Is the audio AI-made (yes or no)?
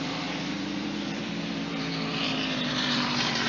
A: yes